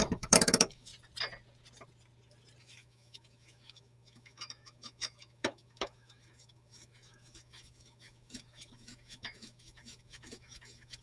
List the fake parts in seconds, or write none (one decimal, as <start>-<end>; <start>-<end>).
0.0-0.9; 2.6-11.0